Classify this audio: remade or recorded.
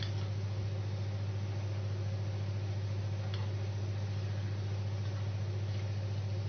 recorded